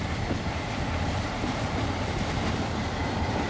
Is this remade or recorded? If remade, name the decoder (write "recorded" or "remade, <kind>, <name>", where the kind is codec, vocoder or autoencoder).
remade, vocoder, BigVGAN v2